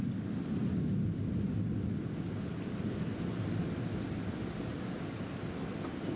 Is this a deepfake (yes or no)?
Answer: no